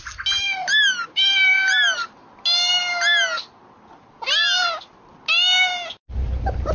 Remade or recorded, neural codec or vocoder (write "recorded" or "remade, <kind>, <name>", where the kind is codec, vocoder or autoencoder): recorded